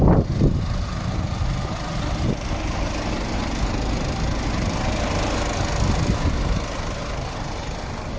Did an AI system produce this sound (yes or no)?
no